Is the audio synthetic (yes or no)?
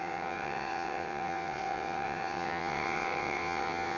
yes